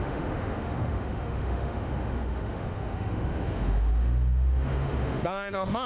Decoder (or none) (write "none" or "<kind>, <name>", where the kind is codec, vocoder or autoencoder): autoencoder, DAC-VAE